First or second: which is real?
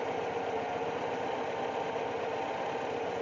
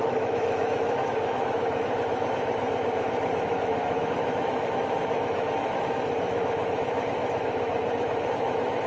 first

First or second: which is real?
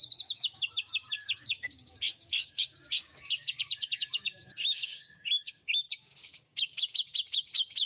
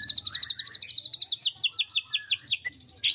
second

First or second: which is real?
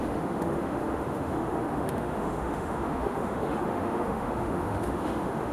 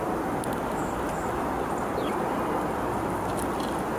second